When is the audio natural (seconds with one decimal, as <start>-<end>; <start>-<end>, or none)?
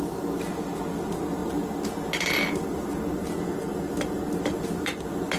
0.0-5.4